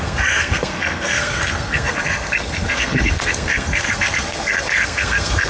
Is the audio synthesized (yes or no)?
yes